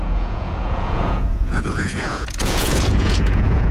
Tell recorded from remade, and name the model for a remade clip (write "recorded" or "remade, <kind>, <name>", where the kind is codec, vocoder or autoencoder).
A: remade, vocoder, Vocos